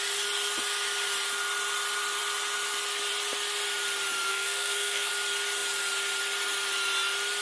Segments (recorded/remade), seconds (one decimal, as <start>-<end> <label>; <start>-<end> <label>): 0.0-4.3 recorded; 4.3-5.1 remade; 5.1-7.4 recorded